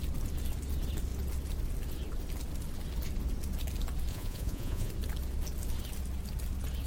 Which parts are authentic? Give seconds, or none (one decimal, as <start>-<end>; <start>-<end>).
0.0-4.1; 4.9-6.9